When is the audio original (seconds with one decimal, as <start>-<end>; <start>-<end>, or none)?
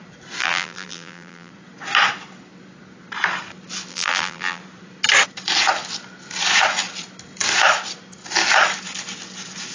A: 0.0-0.4; 1.5-3.9; 4.6-9.7